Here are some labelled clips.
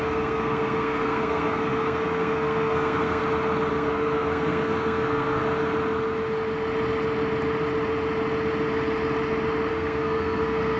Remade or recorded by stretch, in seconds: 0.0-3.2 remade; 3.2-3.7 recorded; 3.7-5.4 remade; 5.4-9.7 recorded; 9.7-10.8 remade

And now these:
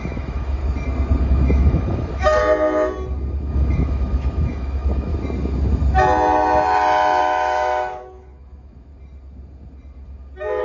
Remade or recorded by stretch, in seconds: 0.0-0.6 remade; 0.6-1.2 recorded; 1.2-2.4 remade; 2.4-3.4 recorded; 3.4-5.1 remade; 5.1-7.2 recorded; 7.2-8.9 remade; 8.9-10.6 recorded